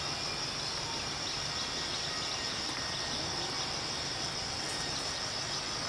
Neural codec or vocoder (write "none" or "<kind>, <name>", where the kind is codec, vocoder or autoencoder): none